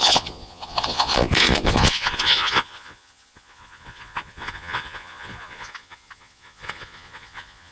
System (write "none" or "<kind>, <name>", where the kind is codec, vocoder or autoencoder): vocoder, Vocos